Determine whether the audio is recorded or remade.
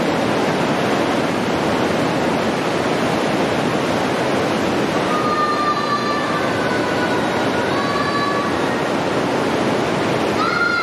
recorded